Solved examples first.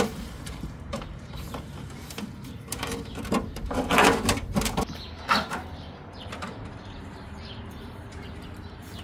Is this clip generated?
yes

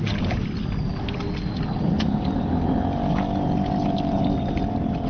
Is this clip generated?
no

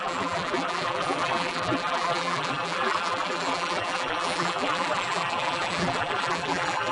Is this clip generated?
yes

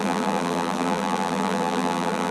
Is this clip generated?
yes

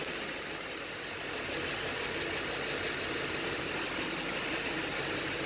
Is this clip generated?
no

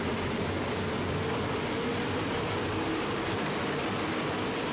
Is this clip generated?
yes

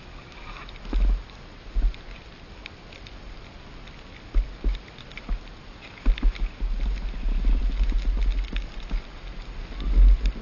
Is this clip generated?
no